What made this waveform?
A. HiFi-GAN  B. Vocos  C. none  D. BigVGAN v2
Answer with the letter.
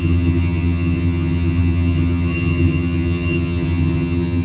A